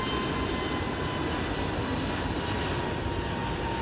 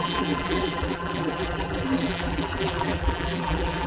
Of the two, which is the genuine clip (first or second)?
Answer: first